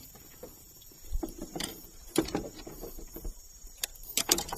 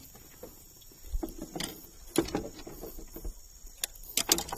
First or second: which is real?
second